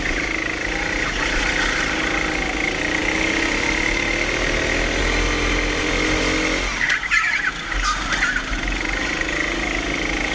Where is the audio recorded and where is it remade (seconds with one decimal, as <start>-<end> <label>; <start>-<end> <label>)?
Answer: 0.0-10.3 recorded